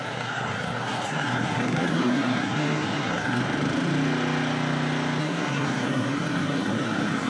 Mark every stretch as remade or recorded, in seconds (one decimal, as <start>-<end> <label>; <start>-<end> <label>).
0.0-3.4 remade; 3.4-5.2 recorded; 5.2-7.3 remade